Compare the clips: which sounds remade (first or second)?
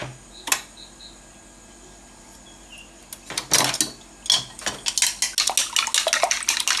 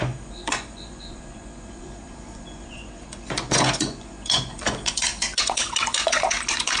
second